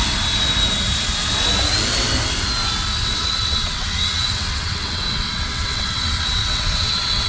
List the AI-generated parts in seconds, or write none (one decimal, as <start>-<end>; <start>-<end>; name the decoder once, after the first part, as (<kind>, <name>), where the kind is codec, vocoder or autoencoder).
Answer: 3.0-7.3 (vocoder, WaveNeXt)